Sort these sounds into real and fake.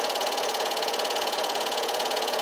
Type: fake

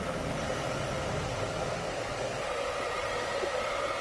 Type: real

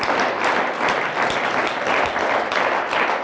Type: real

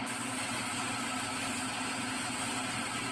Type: real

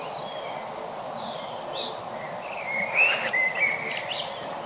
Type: real